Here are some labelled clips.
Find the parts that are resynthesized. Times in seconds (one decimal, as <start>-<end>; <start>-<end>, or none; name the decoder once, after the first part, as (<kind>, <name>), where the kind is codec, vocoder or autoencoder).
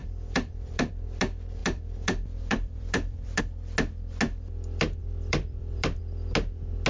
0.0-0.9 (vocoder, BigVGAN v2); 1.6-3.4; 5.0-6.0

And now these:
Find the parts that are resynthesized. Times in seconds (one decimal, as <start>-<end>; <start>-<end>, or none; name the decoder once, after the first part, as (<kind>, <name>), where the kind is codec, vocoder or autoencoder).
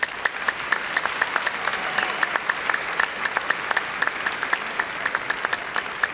0.0-1.7 (vocoder, BigVGAN v2); 5.4-6.1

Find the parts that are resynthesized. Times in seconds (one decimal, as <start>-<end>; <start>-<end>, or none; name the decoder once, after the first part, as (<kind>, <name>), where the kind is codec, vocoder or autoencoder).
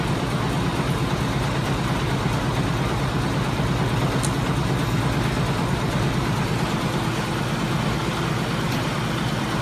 0.7-2.7 (vocoder, BigVGAN v2)